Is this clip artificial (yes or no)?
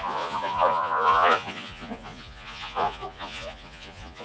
yes